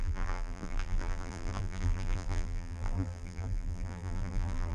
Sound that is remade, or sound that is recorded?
remade